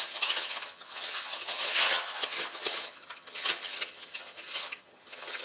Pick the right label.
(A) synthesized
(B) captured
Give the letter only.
A